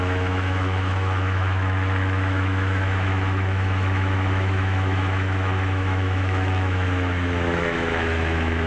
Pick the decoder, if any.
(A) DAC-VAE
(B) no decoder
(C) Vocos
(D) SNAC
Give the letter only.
A